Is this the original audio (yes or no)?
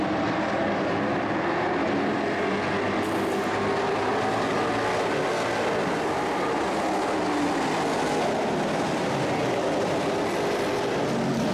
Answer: yes